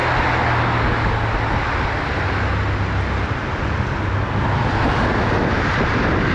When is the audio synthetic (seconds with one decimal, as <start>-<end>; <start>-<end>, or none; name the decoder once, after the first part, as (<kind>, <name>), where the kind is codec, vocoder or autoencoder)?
none